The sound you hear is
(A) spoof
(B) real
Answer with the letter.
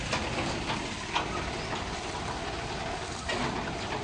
B